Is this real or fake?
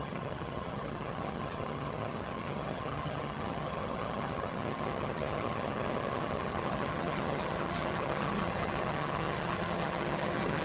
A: fake